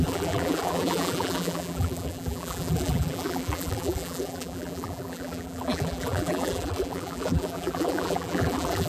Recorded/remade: remade